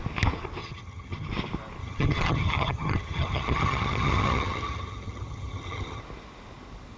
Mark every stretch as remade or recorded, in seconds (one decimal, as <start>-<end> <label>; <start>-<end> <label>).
0.0-0.6 recorded; 0.6-1.3 remade; 1.3-1.8 recorded; 1.8-6.0 remade; 6.0-7.0 recorded